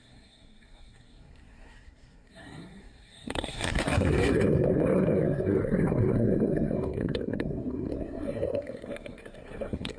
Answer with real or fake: fake